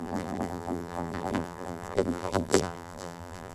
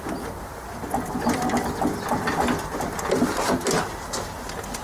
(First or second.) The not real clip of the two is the first